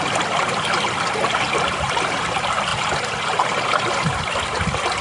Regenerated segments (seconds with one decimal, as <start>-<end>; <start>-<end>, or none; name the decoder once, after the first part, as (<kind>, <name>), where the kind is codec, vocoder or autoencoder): none

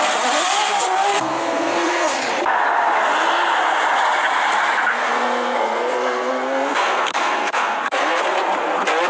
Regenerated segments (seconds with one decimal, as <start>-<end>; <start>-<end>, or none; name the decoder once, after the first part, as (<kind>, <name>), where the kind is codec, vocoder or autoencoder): 1.1-2.2 (codec, SNAC); 4.9-8.2

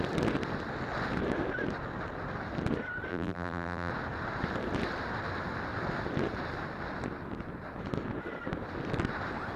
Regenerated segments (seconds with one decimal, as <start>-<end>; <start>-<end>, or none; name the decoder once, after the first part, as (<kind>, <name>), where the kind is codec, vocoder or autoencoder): 3.1-3.9 (vocoder, BigVGAN v2)

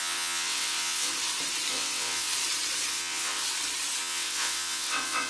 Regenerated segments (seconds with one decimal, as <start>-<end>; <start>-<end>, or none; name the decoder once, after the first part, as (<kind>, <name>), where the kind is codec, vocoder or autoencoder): 0.0-1.1 (vocoder, WaveNeXt); 1.7-2.3; 2.9-3.4; 4.0-5.3